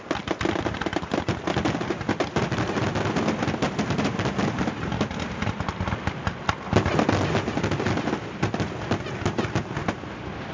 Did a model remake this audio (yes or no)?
no